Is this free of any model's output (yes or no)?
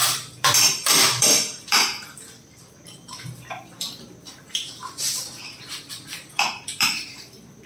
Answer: no